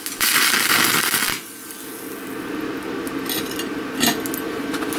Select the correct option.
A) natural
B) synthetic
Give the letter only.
A